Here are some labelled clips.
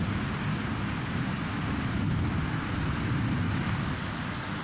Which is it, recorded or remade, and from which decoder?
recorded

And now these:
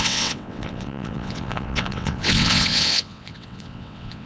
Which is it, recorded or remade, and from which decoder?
remade, vocoder, WaveNeXt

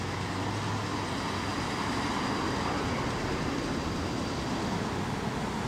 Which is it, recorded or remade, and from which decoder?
recorded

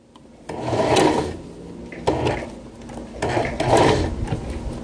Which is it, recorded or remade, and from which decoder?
recorded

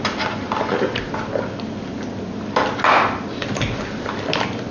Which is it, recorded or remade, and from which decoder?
recorded